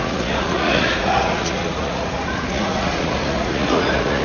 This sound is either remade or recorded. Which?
remade